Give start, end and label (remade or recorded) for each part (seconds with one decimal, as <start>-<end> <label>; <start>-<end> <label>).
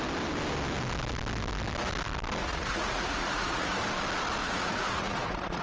0.0-2.4 recorded; 2.4-3.7 remade; 3.7-4.4 recorded; 4.4-5.6 remade